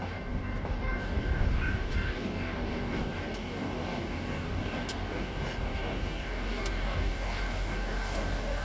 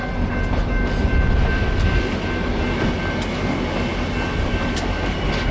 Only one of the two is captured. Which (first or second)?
second